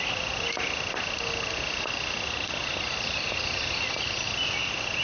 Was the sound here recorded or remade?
recorded